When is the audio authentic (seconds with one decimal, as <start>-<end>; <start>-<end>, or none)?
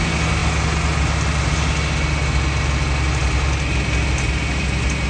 0.0-5.1